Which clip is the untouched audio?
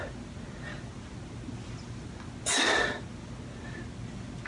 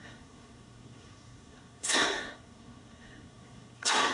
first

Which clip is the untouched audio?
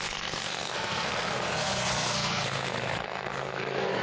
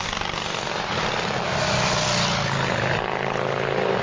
second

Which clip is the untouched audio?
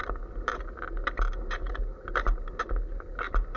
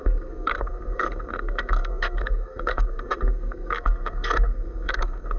first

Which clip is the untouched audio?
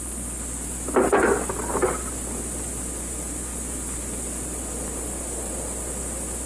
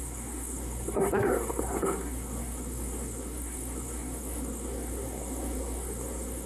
first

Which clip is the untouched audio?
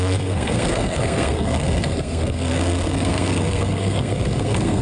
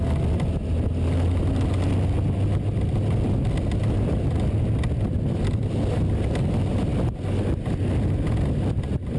second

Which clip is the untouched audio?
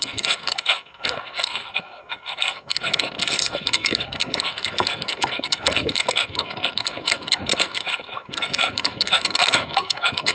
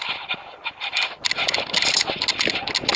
second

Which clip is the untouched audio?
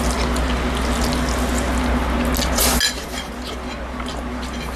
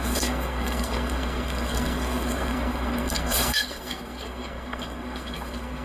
first